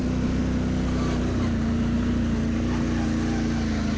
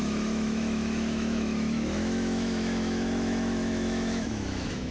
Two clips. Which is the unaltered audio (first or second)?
first